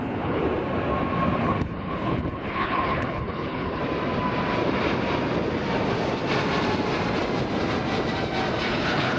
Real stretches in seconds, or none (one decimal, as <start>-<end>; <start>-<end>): 0.4-1.4; 3.8-8.7